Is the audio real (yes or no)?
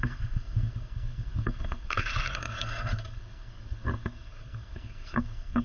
no